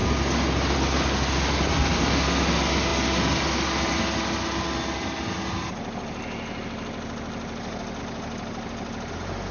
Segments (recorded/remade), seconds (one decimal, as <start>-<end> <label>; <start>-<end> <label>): 0.0-9.5 recorded